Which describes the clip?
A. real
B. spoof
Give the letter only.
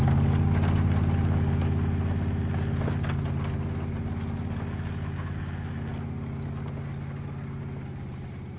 A